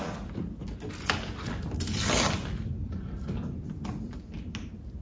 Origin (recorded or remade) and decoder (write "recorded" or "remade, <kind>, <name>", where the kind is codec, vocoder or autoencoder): recorded